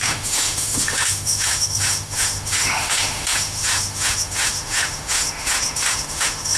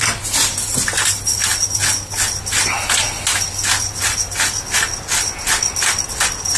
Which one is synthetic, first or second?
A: first